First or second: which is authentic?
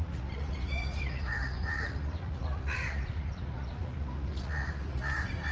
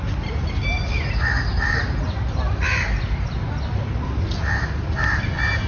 second